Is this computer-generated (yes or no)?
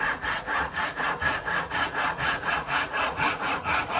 yes